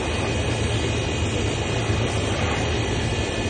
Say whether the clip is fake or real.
real